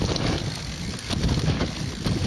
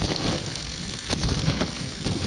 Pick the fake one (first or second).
second